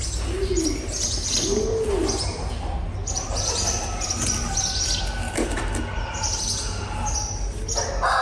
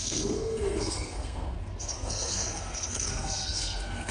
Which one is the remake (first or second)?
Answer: second